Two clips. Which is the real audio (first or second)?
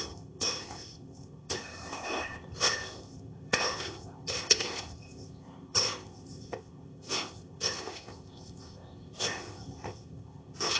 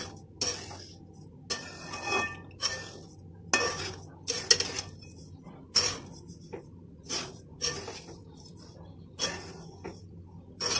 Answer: second